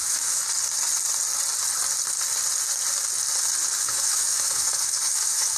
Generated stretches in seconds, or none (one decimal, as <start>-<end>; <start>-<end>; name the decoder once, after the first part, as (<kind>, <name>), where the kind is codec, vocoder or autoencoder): 0.0-0.4 (autoencoder, DAC-VAE); 3.8-5.6